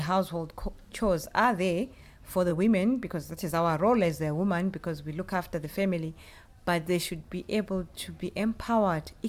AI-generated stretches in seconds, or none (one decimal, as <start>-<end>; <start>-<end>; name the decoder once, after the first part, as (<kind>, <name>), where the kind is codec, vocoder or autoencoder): none